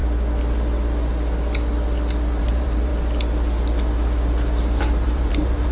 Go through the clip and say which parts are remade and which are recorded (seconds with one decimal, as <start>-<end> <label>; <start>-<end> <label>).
0.0-2.4 recorded; 2.4-2.9 remade; 2.9-4.8 recorded; 4.8-5.7 remade